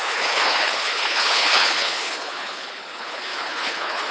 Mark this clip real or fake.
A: fake